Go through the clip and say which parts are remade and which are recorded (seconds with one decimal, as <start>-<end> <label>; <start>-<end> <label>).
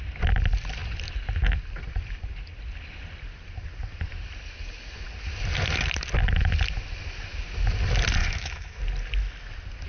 0.0-8.2 recorded; 8.2-8.8 remade; 8.8-9.9 recorded